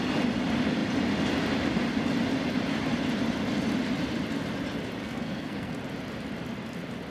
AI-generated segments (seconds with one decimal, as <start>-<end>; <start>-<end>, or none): 5.0-5.7